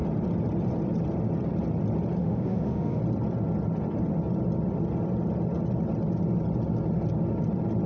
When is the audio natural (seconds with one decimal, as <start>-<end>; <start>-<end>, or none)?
0.0-2.2; 3.0-7.9